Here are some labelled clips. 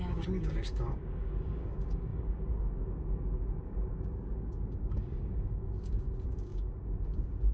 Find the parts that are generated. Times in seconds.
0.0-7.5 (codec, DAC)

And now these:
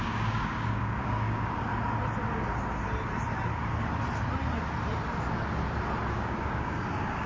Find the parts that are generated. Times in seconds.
0.0-1.7 (codec, DAC); 6.1-7.3

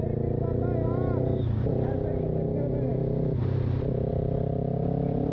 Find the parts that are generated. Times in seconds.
none